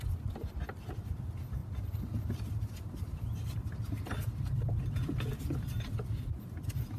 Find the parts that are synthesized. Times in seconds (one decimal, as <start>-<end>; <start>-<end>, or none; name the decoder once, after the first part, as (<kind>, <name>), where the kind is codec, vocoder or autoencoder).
none